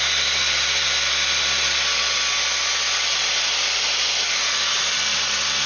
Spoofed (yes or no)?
no